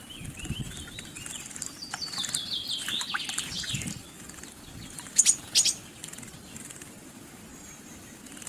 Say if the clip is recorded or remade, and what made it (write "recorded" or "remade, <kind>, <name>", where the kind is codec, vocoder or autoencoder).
recorded